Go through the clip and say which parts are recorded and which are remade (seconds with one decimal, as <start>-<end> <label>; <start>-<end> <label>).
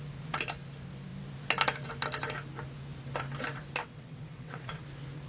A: 0.0-3.8 recorded; 3.8-4.8 remade; 4.8-5.3 recorded